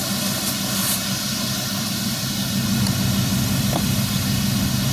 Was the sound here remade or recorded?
recorded